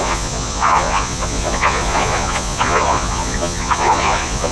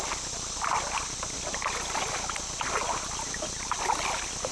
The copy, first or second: first